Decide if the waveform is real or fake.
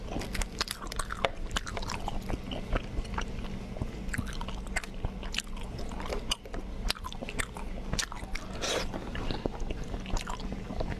real